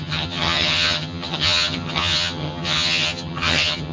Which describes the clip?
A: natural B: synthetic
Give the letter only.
B